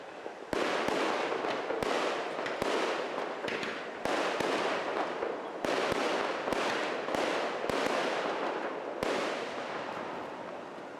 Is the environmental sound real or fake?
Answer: real